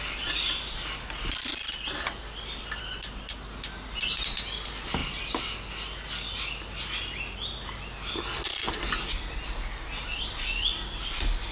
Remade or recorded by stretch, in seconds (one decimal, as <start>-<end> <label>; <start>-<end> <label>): 0.0-11.5 recorded